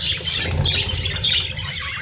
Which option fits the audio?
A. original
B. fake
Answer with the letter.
A